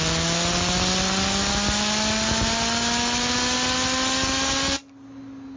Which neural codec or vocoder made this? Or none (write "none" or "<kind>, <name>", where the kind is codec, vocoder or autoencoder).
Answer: none